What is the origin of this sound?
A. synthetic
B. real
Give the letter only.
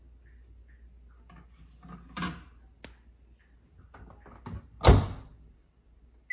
B